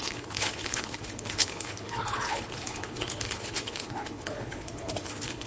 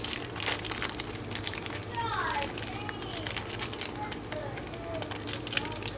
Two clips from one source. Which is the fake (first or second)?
first